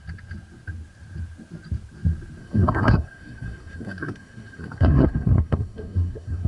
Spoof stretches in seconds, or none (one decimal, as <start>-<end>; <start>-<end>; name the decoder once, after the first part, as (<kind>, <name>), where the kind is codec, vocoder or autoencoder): 2.4-6.5 (codec, SNAC)